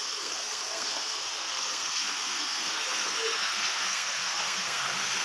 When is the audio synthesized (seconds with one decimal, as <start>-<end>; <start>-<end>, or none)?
0.0-5.2